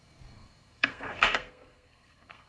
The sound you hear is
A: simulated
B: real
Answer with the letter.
A